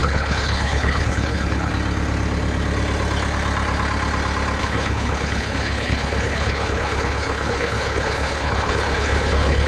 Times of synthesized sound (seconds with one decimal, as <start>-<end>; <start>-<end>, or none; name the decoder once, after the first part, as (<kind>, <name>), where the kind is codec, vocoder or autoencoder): 0.0-1.7 (codec, HILCodec); 4.6-9.7